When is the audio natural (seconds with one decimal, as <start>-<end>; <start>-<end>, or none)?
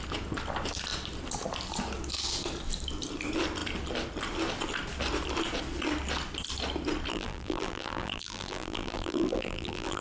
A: 0.0-7.1